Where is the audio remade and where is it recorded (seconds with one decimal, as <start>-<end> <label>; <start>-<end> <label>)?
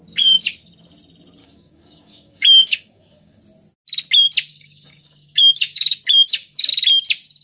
0.0-1.4 recorded; 1.4-3.4 remade; 3.4-4.5 recorded; 4.5-6.7 remade; 6.7-7.4 recorded